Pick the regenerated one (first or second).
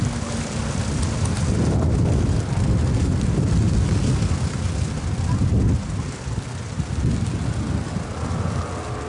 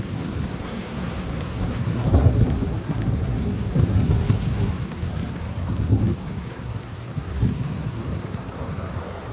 second